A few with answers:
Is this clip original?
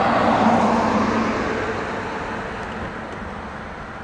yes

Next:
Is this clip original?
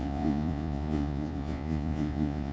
no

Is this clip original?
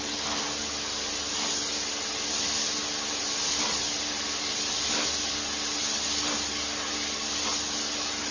yes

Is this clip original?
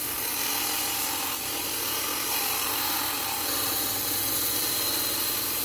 yes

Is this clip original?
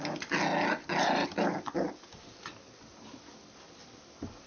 yes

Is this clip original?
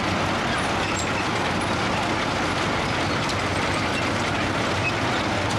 yes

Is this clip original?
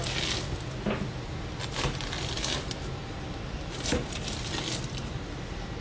yes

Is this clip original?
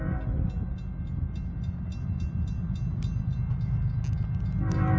yes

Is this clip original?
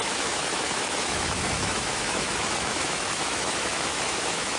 no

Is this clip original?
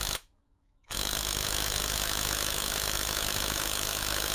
no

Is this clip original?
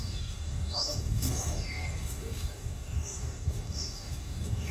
no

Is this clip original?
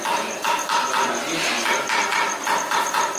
yes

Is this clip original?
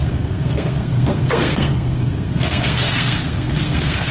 no